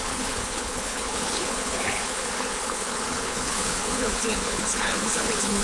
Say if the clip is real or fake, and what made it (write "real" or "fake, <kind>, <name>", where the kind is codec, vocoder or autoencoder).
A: fake, codec, HILCodec